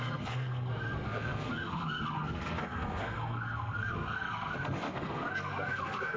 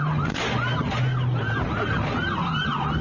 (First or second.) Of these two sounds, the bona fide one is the second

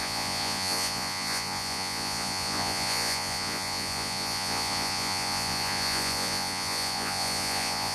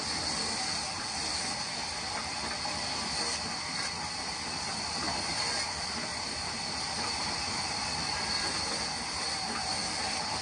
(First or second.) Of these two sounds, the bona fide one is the second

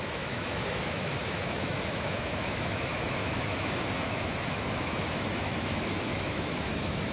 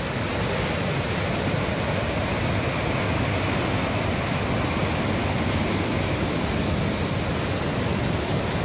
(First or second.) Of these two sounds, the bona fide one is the second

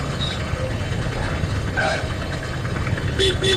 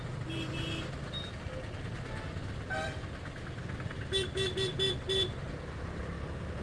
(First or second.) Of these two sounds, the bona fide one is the second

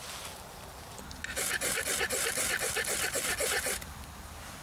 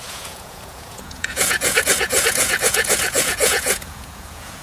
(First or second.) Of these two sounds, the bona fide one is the first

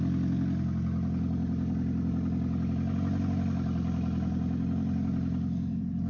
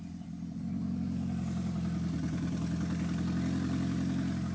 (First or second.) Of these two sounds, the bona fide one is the first